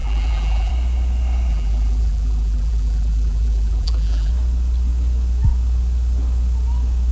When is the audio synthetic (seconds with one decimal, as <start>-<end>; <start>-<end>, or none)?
0.0-0.7; 1.5-4.3